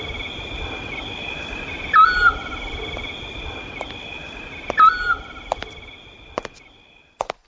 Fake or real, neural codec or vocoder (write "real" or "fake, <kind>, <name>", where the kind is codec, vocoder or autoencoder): real